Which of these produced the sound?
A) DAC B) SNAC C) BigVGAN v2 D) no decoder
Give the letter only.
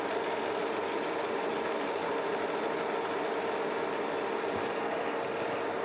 D